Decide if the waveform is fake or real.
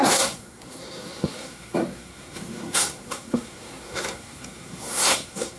fake